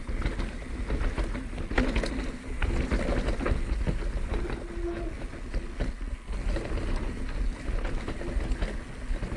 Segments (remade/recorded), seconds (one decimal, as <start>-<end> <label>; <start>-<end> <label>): 0.0-9.4 recorded